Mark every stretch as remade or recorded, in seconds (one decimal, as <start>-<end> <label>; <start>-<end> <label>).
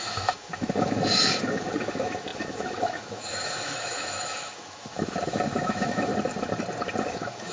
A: 0.0-6.1 remade; 6.1-7.0 recorded; 7.0-7.5 remade